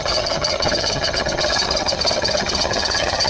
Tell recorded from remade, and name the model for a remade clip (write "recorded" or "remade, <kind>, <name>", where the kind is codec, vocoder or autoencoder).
remade, vocoder, HiFi-GAN